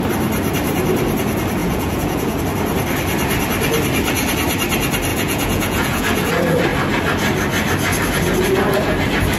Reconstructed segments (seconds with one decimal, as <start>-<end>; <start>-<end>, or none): 1.6-2.4; 5.1-6.3